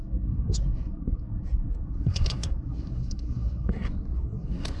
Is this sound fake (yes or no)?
yes